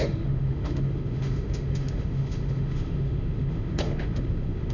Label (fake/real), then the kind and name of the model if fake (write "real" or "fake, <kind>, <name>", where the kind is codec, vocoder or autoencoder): fake, autoencoder, DAC-VAE